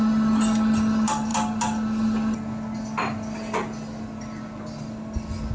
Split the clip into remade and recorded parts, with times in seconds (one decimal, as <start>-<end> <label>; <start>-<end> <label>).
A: 0.0-5.5 recorded